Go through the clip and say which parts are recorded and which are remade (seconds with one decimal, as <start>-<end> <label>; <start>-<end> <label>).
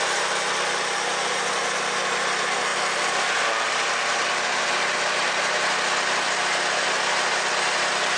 0.0-2.7 recorded; 2.7-5.4 remade; 5.4-8.2 recorded